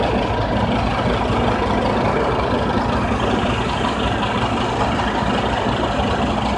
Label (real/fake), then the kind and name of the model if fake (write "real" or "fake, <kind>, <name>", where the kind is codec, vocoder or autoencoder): real